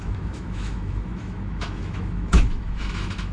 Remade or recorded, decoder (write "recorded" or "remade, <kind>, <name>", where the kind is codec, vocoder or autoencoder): remade, autoencoder, DAC-VAE